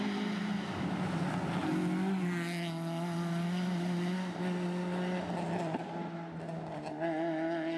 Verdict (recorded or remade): recorded